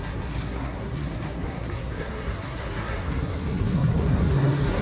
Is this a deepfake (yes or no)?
yes